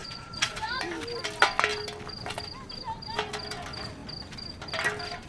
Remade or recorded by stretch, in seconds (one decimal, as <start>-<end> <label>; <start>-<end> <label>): 0.0-0.8 remade; 0.8-5.3 recorded